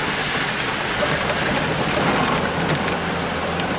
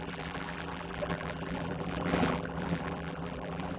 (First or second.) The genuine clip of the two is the first